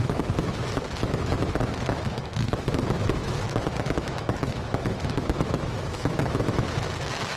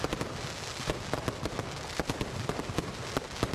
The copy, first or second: first